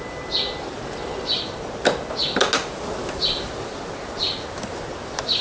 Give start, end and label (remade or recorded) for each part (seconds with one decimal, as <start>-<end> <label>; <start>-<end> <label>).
0.0-5.4 recorded